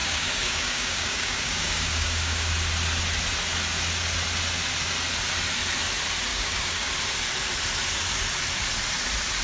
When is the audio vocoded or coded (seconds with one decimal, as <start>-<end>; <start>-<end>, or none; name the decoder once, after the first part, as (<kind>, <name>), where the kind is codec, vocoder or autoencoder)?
0.0-2.5 (codec, DAC); 6.3-6.9